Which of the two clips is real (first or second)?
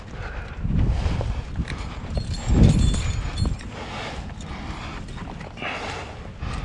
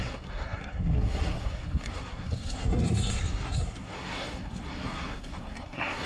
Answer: first